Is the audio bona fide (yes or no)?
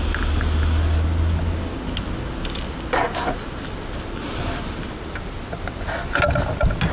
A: yes